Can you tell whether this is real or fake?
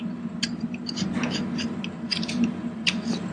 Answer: real